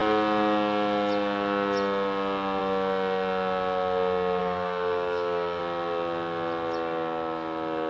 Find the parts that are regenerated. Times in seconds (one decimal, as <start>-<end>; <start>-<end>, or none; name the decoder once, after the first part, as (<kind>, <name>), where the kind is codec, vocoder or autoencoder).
4.4-5.6 (codec, DAC)

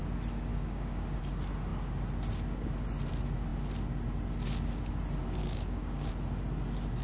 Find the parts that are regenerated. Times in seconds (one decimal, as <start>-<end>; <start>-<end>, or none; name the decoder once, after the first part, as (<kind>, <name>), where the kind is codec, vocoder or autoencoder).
0.5-1.2 (codec, DAC); 5.4-6.1

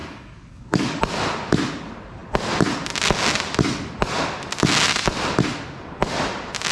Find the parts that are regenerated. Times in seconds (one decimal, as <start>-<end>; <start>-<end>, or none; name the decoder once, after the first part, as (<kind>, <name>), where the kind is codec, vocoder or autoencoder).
0.0-1.0 (codec, DAC)

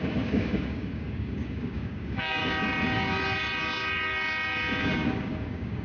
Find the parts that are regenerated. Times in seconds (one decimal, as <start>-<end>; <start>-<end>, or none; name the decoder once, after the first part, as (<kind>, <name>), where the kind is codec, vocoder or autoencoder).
0.0-2.4 (codec, DAC); 4.8-5.8

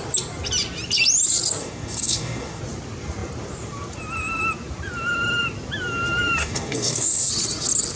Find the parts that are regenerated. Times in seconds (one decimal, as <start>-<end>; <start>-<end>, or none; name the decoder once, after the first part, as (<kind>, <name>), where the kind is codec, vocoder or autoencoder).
1.6-2.6 (codec, DAC); 6.4-7.3